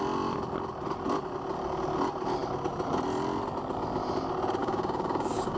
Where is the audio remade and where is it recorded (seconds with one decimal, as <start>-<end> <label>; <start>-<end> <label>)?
0.0-4.6 recorded; 4.6-5.6 remade